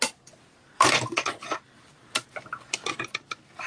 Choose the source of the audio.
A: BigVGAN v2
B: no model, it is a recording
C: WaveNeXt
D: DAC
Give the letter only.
B